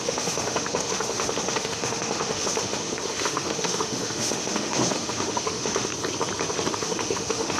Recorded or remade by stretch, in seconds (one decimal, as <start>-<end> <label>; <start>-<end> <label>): 0.0-5.9 remade; 5.9-6.7 recorded; 6.7-7.6 remade